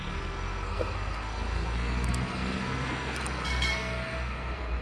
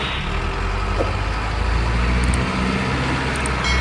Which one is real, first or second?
second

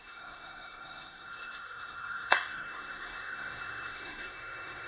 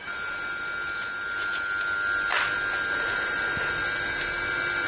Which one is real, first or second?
second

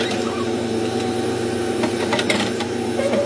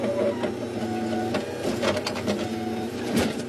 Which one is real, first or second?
second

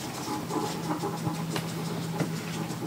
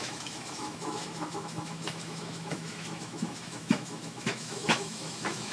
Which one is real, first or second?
first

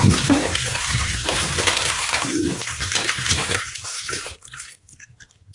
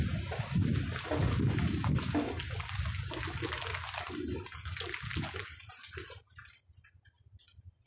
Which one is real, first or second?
second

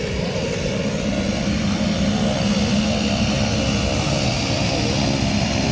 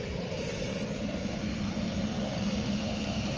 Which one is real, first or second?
first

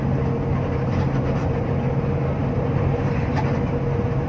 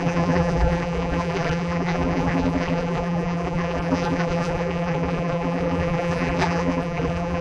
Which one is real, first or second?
first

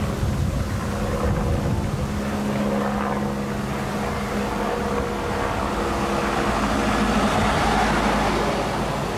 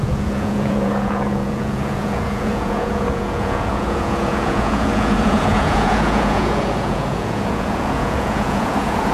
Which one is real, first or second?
first